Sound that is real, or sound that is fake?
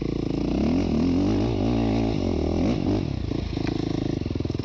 real